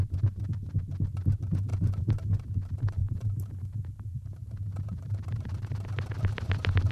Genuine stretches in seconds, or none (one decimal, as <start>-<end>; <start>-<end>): 0.0-1.7; 2.3-3.0